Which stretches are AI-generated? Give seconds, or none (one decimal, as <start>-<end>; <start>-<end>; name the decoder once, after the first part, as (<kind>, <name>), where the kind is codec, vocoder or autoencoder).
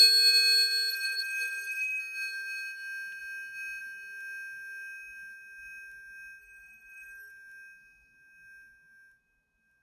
0.9-2.0 (codec, SNAC); 6.4-7.3